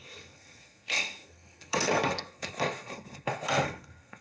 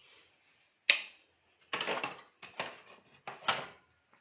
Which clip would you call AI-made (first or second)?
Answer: first